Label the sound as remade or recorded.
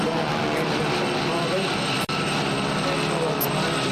recorded